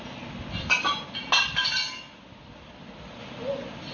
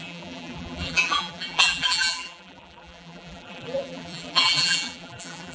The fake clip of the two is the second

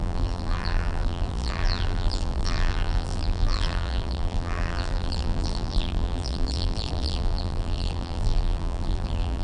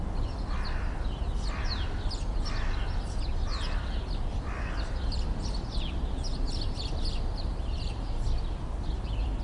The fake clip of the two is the first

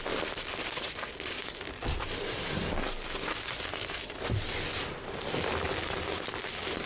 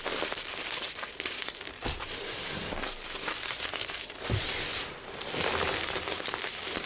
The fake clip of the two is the second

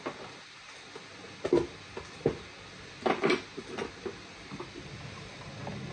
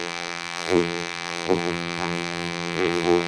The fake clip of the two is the second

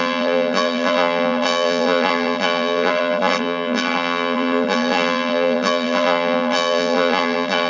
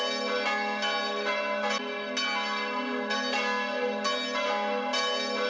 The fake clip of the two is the first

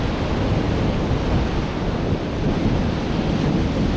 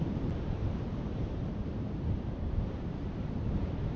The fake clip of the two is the second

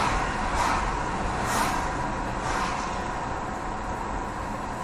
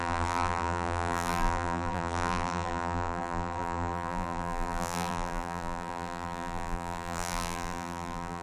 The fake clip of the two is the second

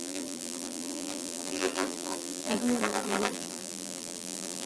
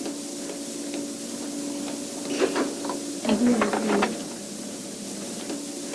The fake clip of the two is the first